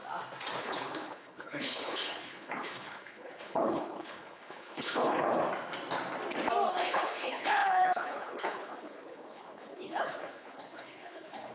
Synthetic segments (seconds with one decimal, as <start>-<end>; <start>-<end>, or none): 0.6-5.4; 6.7-11.5